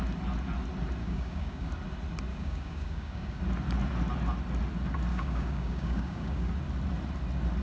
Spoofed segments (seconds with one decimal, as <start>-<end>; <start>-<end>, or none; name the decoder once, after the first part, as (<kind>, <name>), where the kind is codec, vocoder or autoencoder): 1.0-1.7 (codec, DAC); 2.3-3.4; 5.1-6.5